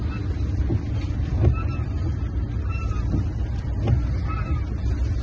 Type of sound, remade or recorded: recorded